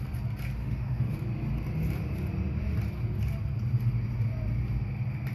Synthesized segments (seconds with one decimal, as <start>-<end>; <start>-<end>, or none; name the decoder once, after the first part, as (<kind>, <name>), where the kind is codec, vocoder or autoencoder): 0.6-1.1 (autoencoder, DAC-VAE)